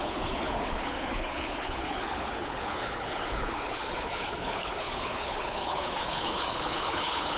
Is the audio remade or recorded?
remade